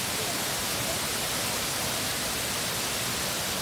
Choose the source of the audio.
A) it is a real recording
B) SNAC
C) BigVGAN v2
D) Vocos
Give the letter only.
A